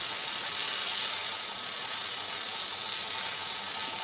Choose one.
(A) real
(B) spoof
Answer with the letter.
A